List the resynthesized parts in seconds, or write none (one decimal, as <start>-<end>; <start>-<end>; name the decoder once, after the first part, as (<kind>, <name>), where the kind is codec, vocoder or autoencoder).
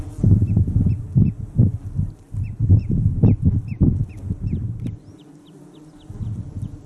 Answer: none